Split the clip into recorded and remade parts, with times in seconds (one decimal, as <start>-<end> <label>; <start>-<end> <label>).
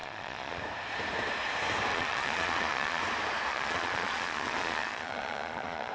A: 0.0-0.6 remade; 0.6-1.9 recorded; 1.9-3.0 remade; 3.0-3.5 recorded; 3.5-5.9 remade